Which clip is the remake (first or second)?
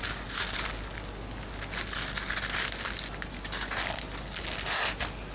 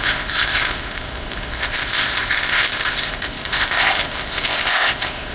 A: second